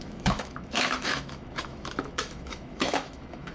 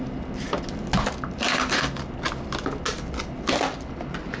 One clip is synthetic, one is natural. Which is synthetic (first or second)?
first